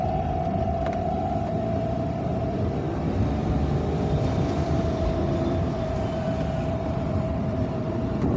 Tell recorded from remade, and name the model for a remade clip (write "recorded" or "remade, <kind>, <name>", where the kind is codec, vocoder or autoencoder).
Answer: remade, vocoder, BigVGAN v2